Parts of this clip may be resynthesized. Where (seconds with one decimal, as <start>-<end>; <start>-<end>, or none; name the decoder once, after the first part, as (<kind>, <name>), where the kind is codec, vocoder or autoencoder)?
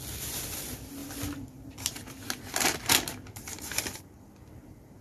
none